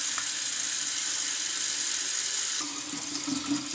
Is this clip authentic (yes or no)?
yes